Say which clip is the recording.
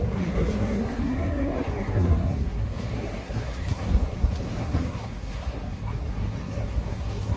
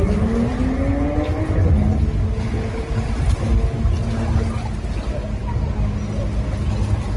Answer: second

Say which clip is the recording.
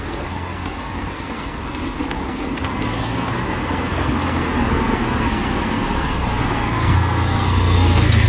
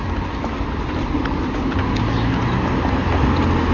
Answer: second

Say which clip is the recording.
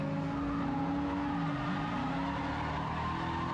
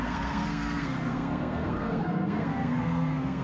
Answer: first